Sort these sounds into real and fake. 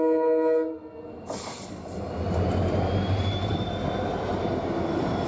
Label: real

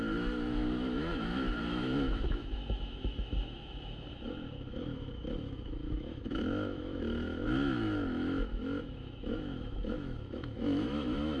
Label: fake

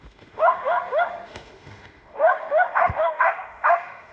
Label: fake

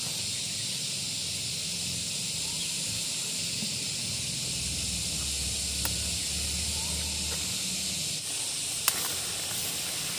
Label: real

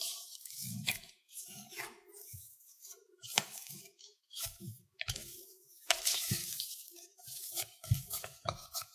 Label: fake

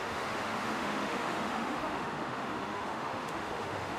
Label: fake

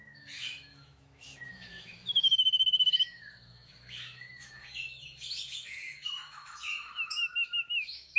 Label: fake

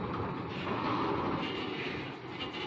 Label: real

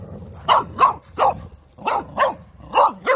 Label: real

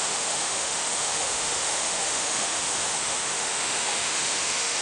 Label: fake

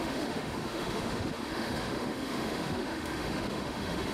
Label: fake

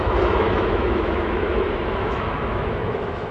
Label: fake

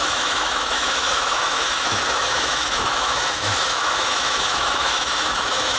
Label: fake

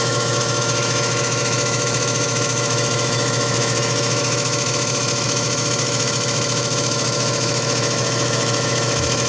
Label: fake